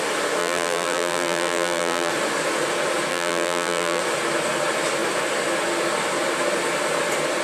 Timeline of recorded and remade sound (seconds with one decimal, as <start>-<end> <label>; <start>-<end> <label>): 0.0-0.4 recorded; 0.4-2.1 remade; 2.1-3.1 recorded; 3.1-4.0 remade; 4.0-7.4 recorded